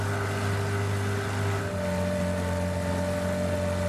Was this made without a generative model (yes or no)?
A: yes